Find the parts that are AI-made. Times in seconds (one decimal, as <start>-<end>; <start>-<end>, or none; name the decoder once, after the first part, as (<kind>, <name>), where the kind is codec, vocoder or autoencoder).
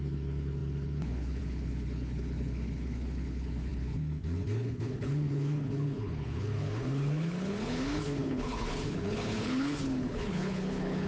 0.0-11.1 (codec, HILCodec)